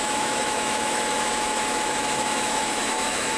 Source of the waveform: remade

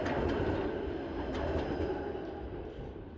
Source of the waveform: recorded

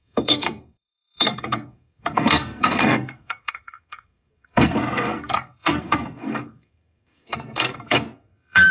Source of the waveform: remade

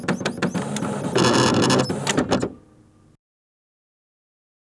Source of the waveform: recorded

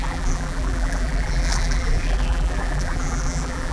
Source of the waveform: remade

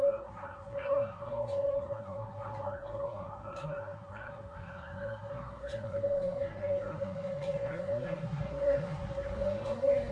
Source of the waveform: remade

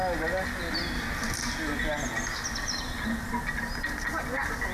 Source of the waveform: recorded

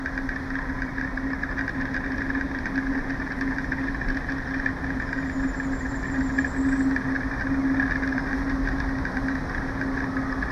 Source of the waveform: recorded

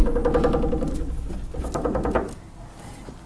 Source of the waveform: recorded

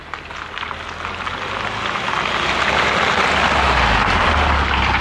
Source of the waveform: recorded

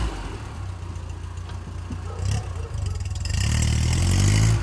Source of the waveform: recorded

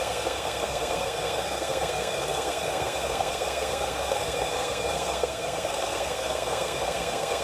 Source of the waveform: remade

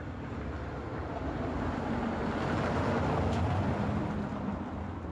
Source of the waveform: recorded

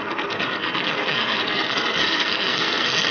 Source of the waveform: remade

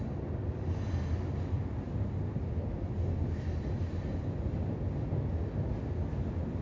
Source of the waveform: recorded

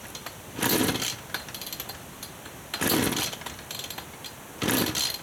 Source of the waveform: recorded